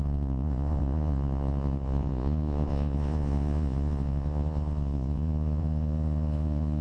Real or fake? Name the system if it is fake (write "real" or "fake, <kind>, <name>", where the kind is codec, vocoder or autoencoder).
fake, vocoder, Vocos